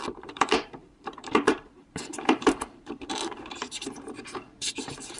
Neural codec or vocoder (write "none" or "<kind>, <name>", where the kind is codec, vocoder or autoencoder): vocoder, BigVGAN v2